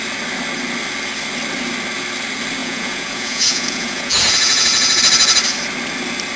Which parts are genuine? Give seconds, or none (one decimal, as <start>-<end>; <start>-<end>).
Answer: 0.0-2.6; 5.0-6.4

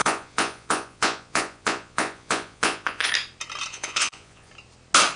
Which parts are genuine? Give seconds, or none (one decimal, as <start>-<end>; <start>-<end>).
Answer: 3.1-3.7; 4.5-5.2

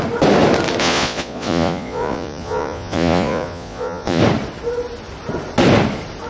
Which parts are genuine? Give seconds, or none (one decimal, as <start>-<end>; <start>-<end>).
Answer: 0.0-0.8; 4.2-6.3